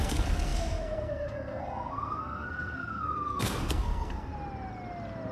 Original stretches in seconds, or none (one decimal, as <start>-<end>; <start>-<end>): 4.3-5.3